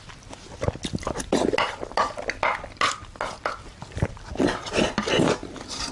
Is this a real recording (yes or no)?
yes